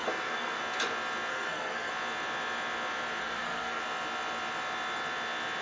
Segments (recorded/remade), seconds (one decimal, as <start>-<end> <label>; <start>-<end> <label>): 0.0-0.6 remade; 0.6-1.3 recorded; 1.3-1.9 remade; 1.9-3.2 recorded; 3.2-3.8 remade; 3.8-5.6 recorded